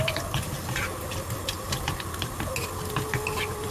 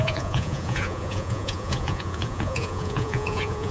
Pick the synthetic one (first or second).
second